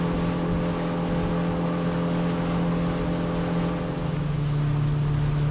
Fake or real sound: real